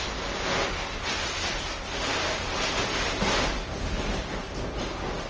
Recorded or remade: remade